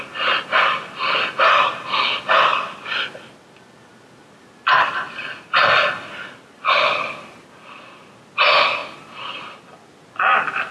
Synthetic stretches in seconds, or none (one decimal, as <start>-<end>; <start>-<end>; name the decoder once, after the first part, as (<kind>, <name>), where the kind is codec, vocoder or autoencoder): none

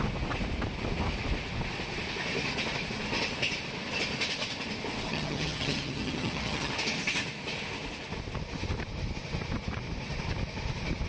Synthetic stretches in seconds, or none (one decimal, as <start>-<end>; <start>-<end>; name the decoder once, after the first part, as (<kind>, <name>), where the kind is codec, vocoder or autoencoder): 5.1-6.7 (vocoder, HiFi-GAN)

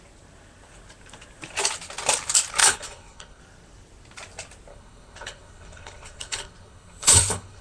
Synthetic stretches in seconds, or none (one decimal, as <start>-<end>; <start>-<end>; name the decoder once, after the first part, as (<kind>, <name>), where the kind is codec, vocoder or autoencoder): 2.6-3.4 (codec, HILCodec); 4.7-7.6

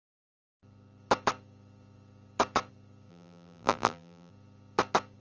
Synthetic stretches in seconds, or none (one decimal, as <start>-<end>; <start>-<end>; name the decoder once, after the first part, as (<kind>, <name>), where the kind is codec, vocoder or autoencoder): 3.1-4.3 (vocoder, BigVGAN v2)

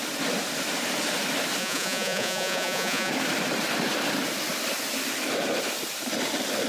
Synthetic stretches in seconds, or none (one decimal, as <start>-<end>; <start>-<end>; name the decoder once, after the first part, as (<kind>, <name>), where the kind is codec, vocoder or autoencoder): 1.6-3.1 (vocoder, Vocos)

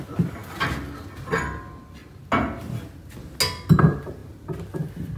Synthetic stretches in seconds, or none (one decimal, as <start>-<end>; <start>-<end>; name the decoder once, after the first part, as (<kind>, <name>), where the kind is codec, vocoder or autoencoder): none

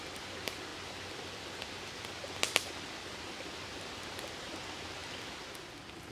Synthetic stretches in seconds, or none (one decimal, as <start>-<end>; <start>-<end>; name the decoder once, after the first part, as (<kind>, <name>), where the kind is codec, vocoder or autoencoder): none